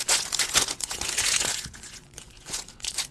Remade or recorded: remade